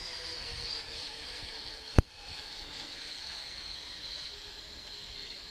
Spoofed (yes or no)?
yes